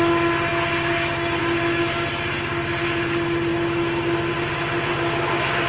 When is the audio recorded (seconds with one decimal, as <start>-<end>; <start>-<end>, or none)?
0.0-5.7